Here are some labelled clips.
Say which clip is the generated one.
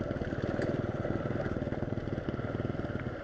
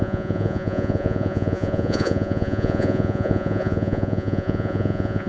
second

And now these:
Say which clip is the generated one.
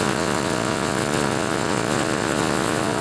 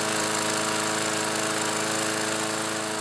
first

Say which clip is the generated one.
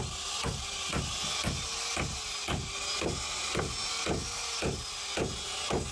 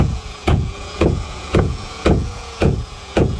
second